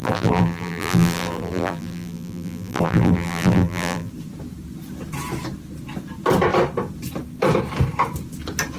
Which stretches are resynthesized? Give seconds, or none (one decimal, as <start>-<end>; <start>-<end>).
0.0-4.1